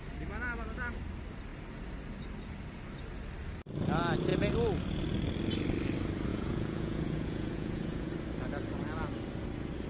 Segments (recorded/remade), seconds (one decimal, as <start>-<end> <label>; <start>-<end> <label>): 0.0-6.3 recorded; 6.3-8.1 remade; 8.1-9.9 recorded